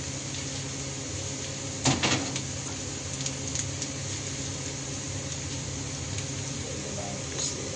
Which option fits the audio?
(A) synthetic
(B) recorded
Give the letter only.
B